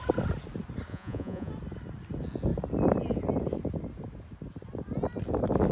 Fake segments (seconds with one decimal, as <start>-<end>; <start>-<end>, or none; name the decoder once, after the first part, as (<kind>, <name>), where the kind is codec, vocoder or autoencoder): 0.9-1.5 (vocoder, Vocos)